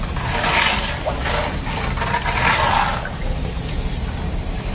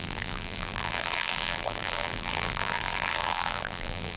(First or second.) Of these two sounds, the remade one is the second